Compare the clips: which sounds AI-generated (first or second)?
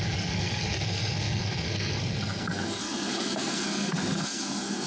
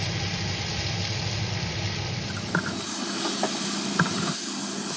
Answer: first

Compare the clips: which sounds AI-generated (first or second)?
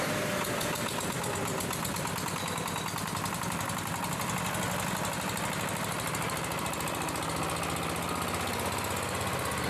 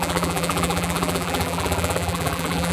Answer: second